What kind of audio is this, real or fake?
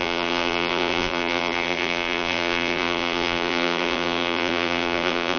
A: fake